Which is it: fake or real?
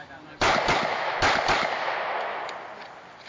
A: real